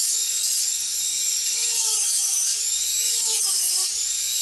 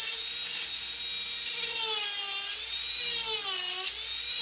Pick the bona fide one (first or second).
second